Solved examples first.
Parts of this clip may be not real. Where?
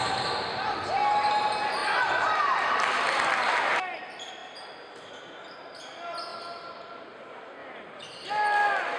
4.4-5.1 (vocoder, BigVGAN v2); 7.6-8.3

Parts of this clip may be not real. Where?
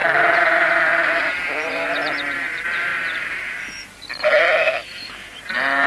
0.0-5.9 (vocoder, BigVGAN v2)